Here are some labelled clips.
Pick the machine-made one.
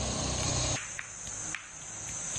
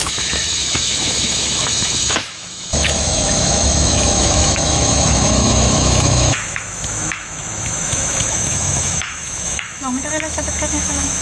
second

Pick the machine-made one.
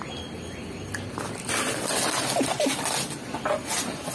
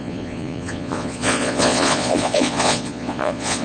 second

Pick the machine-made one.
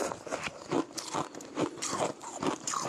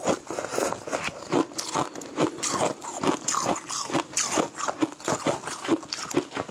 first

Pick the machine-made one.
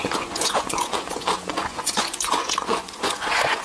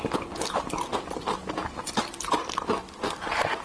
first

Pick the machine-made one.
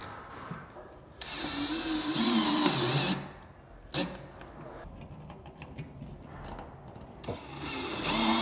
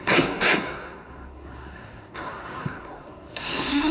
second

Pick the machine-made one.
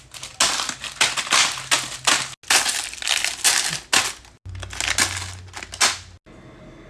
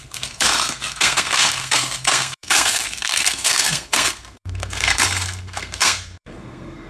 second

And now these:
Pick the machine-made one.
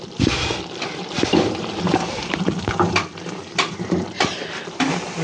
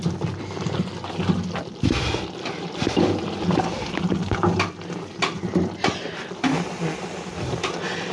first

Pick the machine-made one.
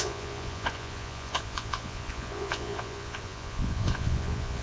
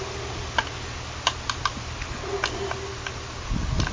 first